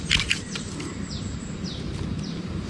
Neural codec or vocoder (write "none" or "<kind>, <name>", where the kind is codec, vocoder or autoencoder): none